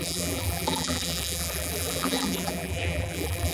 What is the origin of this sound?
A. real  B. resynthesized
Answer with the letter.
B